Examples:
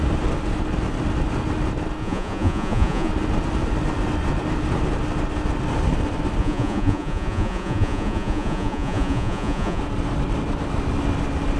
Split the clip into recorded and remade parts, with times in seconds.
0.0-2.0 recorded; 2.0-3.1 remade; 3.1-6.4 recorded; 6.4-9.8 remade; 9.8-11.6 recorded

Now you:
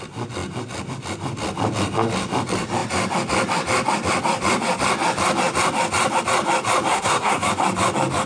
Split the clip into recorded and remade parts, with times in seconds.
0.0-6.9 recorded; 6.9-7.5 remade; 7.5-8.3 recorded